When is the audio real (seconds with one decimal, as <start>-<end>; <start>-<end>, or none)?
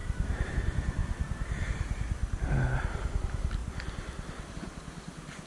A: 1.0-1.7; 2.2-3.2; 3.6-4.5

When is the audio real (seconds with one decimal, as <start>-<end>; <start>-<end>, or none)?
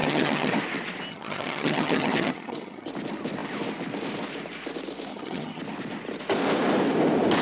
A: 0.5-1.1; 2.9-5.1; 5.6-7.4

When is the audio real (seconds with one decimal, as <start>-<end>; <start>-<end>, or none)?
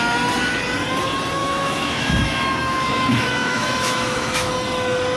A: 0.0-1.4; 4.5-5.2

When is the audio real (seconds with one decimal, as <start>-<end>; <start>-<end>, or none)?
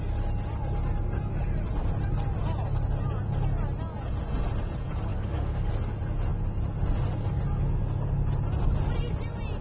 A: 0.0-5.1; 5.7-9.6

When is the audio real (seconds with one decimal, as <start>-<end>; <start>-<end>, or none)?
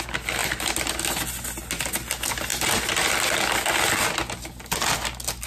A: 0.0-5.5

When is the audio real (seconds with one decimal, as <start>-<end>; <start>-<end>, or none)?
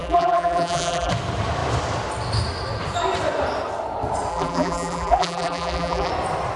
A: 1.1-4.3; 6.1-6.6